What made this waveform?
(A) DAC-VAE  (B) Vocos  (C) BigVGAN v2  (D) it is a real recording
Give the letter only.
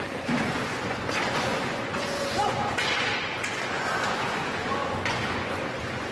B